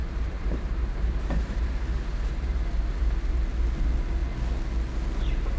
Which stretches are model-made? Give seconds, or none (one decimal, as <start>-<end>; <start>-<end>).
0.0-3.4